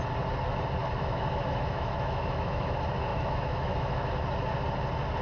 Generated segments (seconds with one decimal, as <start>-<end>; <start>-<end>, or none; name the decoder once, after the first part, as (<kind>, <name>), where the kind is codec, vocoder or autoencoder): 0.8-2.7 (autoencoder, DAC-VAE); 3.1-4.1